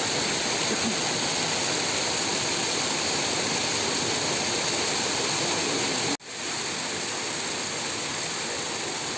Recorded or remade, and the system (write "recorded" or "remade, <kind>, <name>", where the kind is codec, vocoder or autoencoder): recorded